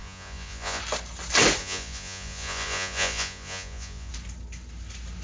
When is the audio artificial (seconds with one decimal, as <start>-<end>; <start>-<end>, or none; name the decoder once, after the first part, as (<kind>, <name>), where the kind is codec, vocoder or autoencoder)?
0.0-0.8 (vocoder, Vocos); 1.6-4.1